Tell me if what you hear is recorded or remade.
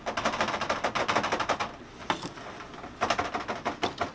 recorded